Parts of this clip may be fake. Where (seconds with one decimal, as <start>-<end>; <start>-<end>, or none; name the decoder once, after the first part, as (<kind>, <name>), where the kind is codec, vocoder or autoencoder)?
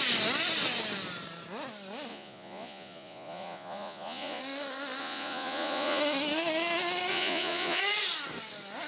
2.1-4.4 (vocoder, Vocos); 5.0-6.0; 7.1-7.8